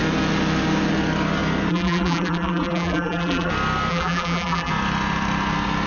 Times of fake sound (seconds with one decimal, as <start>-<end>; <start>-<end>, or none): 1.7-3.5; 3.9-4.7